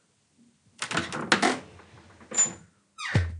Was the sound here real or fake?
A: real